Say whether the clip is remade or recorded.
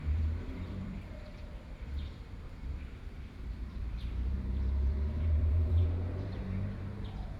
remade